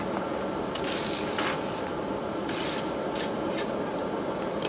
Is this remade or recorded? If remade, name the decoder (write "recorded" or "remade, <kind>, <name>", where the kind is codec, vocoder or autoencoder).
recorded